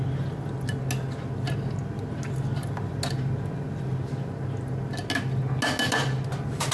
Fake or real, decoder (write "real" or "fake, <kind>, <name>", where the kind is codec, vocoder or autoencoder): real